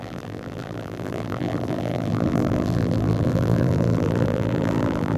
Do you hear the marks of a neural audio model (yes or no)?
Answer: yes